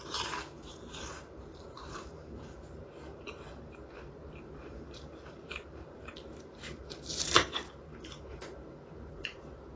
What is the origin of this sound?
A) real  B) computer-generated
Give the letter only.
B